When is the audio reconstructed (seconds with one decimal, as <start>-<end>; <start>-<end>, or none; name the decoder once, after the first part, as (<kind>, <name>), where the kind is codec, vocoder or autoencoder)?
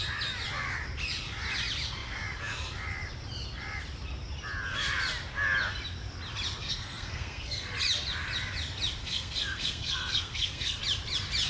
6.6-7.7 (codec, SNAC); 9.0-10.8